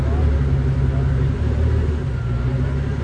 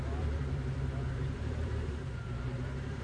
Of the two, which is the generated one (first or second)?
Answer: second